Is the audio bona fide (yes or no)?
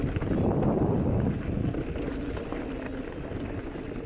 yes